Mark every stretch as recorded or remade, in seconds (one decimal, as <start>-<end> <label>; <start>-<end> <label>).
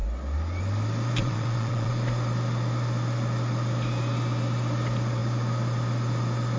0.0-1.2 recorded; 1.2-1.9 remade; 1.9-6.6 recorded